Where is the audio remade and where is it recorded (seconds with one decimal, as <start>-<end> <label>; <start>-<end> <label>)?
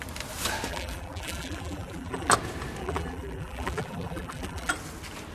0.0-0.7 recorded; 0.7-2.3 remade; 2.3-2.8 recorded; 2.8-4.7 remade; 4.7-5.3 recorded